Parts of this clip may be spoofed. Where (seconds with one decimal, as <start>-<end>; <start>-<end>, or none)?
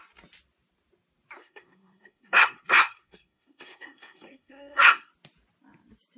1.4-5.1